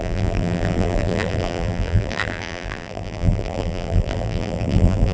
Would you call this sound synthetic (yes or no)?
yes